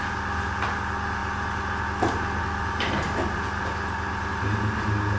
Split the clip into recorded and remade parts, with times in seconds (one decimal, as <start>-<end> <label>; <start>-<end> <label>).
0.0-5.2 recorded